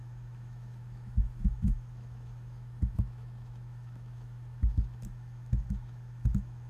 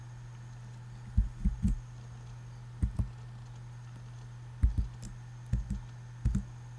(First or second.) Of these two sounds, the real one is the second